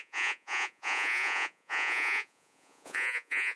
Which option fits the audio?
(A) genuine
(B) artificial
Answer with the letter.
B